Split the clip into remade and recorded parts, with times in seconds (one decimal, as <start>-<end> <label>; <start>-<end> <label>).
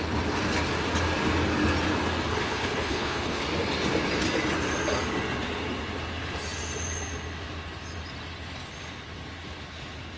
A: 0.0-2.3 recorded; 2.3-3.4 remade; 3.4-10.2 recorded